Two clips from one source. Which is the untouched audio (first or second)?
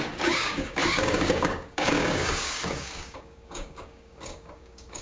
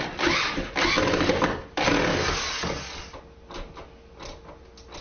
second